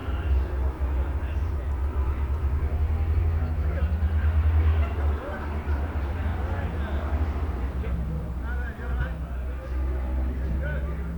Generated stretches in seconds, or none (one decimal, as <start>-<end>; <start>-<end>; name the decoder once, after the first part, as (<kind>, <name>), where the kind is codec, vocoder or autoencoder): 3.2-3.8 (autoencoder, DAC-VAE)